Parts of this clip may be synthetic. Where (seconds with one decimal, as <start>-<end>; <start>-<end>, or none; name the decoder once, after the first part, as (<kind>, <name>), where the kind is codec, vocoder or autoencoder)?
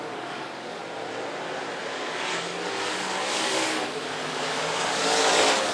0.0-0.8 (codec, DAC); 1.7-5.7